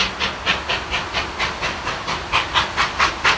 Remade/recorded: recorded